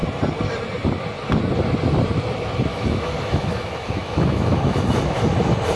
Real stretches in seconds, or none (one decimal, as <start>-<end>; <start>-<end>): 0.0-2.7; 5.3-5.8